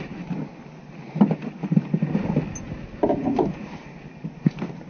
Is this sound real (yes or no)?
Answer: yes